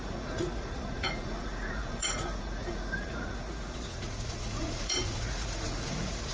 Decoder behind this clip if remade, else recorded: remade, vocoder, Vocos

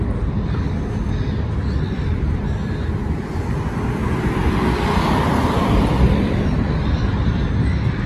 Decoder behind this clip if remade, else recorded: recorded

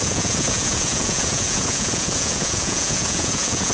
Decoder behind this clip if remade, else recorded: remade, vocoder, Vocos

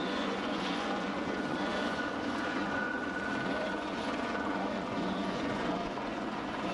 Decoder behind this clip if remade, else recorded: remade, vocoder, Vocos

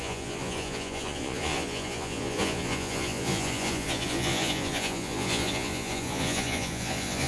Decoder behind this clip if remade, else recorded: remade, vocoder, Vocos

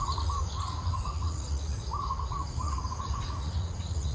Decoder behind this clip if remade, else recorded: remade, vocoder, Vocos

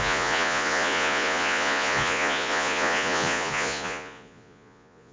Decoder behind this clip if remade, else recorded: remade, vocoder, Vocos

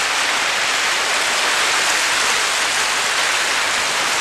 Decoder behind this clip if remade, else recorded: recorded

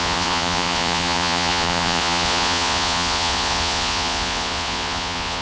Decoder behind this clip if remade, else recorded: remade, vocoder, Vocos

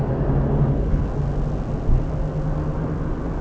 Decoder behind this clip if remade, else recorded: recorded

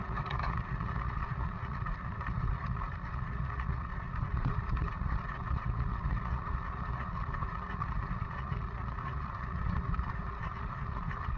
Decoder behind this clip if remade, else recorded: remade, vocoder, Vocos